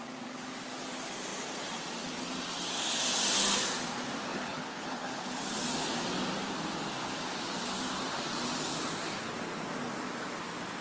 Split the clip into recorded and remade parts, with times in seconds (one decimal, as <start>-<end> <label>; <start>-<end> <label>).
0.0-4.3 recorded; 4.3-5.4 remade; 5.4-10.8 recorded